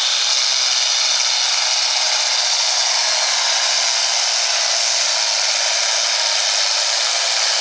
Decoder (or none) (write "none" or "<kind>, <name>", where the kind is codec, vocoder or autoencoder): none